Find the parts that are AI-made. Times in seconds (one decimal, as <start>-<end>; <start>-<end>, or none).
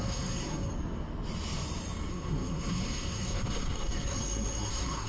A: 0.0-0.7; 2.1-5.1